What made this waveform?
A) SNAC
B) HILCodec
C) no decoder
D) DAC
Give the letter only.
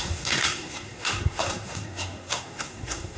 A